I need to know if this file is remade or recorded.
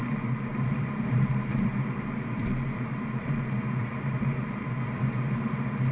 remade